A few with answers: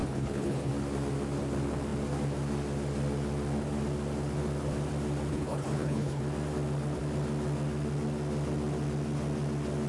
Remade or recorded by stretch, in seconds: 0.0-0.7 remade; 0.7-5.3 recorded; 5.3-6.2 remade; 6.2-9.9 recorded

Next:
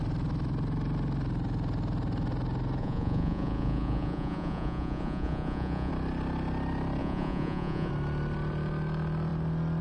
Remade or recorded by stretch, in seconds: 0.0-2.8 recorded; 2.8-5.9 remade; 5.9-7.0 recorded; 7.0-7.9 remade; 7.9-9.8 recorded

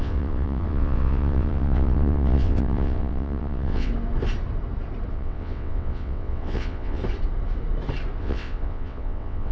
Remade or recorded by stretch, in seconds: 0.0-3.9 remade; 3.9-5.1 recorded; 5.1-7.0 remade; 7.0-8.2 recorded; 8.2-9.5 remade

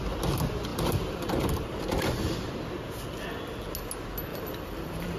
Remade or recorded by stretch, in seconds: 0.0-0.7 recorded; 0.7-2.5 remade; 2.5-4.3 recorded; 4.3-5.2 remade

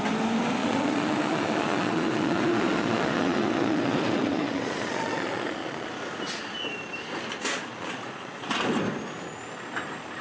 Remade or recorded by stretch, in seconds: 0.0-0.6 recorded; 0.6-5.9 remade; 5.9-7.5 recorded; 7.5-8.5 remade; 8.5-10.2 recorded

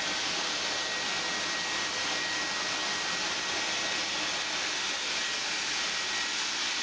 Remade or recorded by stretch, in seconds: 0.0-6.8 recorded

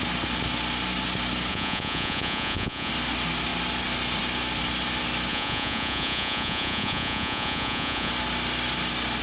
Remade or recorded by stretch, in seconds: 0.0-1.5 recorded; 1.5-2.9 remade; 2.9-5.3 recorded; 5.3-8.1 remade; 8.1-9.2 recorded